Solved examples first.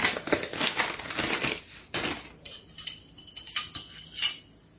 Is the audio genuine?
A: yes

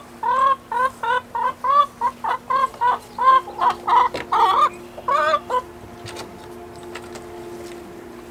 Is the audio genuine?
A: yes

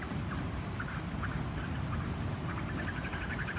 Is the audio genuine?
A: no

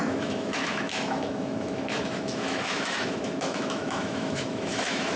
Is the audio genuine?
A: no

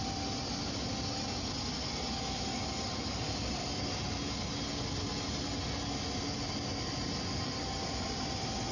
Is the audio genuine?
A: yes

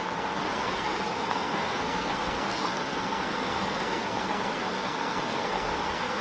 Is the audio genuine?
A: no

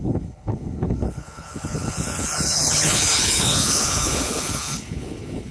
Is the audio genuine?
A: no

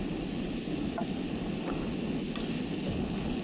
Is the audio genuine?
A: yes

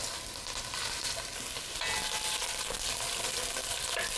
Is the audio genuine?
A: yes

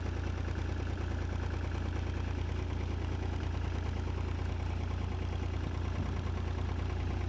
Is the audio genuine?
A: yes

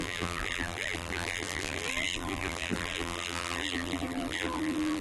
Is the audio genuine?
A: no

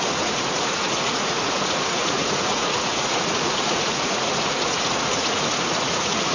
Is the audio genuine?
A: no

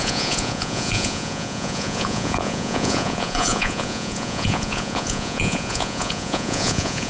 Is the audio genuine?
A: no